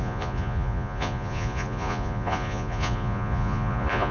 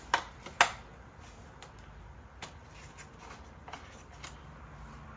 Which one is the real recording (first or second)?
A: second